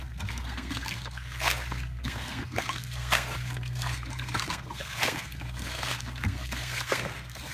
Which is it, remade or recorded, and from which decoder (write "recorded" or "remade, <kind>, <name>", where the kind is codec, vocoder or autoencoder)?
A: remade, codec, SNAC